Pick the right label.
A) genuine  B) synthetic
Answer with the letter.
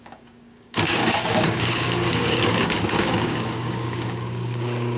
B